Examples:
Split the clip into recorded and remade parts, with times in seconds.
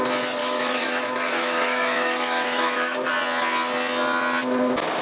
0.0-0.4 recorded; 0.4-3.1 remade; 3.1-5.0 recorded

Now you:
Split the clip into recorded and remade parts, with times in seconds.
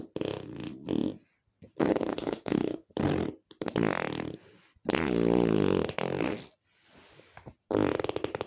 0.0-2.1 recorded; 2.1-2.9 remade; 2.9-8.5 recorded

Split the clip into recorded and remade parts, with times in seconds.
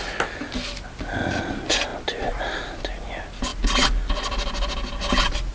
0.0-5.5 recorded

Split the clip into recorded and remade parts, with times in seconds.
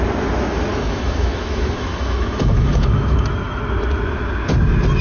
0.0-0.7 recorded; 0.7-3.6 remade; 3.6-5.0 recorded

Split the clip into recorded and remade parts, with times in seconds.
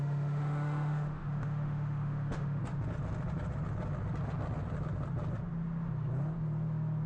0.0-2.6 remade; 2.6-7.1 recorded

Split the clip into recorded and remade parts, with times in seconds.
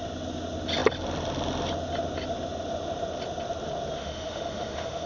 0.0-4.0 recorded; 4.0-5.1 remade